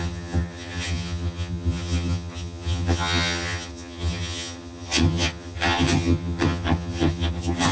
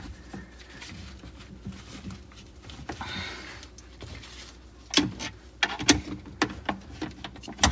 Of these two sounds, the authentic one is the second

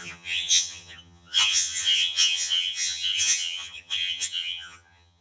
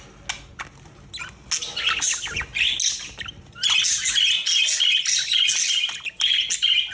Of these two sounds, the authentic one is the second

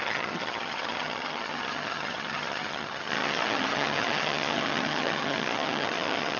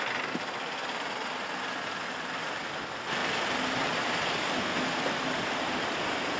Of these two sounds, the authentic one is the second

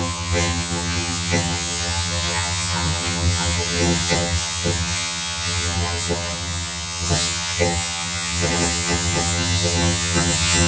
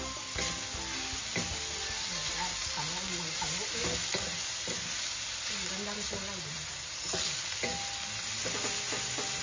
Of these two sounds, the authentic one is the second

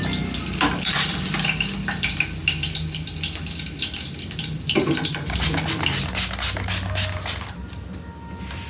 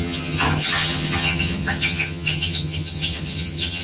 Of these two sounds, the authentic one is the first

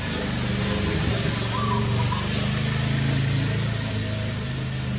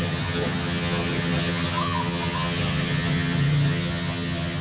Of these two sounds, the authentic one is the first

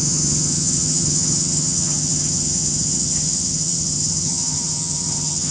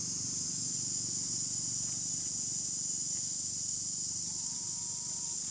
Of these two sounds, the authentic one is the second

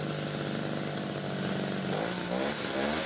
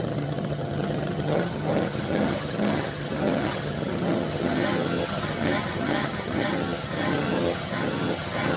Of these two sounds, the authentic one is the first